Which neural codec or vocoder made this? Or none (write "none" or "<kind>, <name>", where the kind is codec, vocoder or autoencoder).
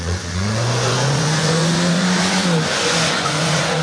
vocoder, Vocos